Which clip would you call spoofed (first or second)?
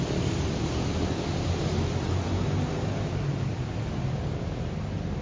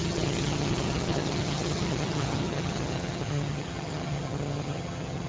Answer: second